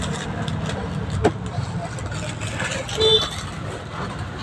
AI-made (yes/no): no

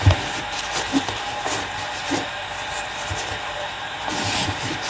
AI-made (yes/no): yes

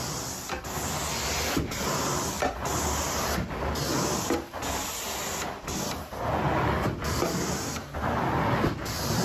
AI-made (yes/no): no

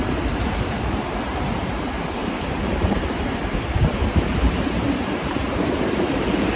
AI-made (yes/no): yes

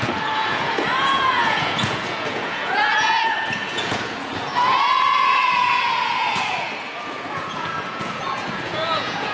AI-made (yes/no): yes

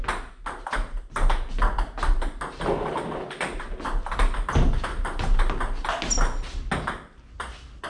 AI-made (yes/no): no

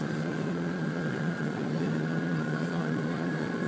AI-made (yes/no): yes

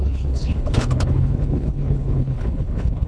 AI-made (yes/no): yes